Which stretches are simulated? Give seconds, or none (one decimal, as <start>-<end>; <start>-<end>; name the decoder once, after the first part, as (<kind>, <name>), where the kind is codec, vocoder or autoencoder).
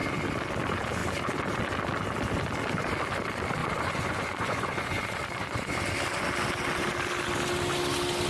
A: 3.6-5.8 (vocoder, Vocos)